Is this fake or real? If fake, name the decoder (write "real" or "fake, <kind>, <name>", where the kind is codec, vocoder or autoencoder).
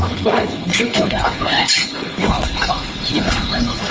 fake, codec, HILCodec